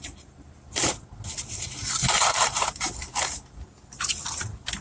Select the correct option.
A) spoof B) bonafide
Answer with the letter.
B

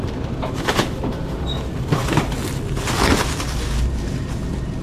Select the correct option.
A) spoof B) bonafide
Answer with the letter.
A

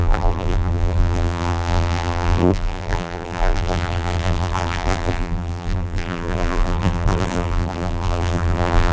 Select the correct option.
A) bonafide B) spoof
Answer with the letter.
B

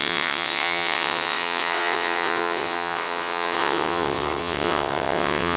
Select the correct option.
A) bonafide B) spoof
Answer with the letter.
B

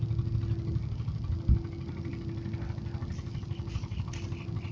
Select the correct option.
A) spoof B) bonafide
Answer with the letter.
B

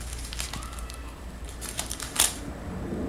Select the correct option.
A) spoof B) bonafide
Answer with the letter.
A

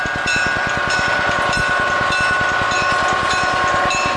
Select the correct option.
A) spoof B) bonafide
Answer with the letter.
A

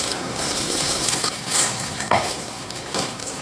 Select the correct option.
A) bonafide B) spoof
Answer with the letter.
B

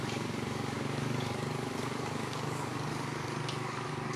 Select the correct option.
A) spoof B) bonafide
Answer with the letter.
A